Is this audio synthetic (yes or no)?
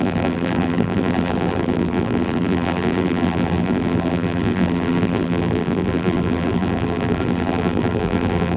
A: yes